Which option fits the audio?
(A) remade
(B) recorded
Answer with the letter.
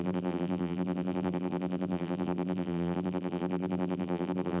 A